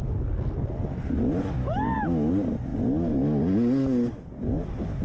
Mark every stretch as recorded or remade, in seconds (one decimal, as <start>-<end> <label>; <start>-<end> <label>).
0.0-1.6 recorded; 1.6-2.3 remade; 2.3-5.0 recorded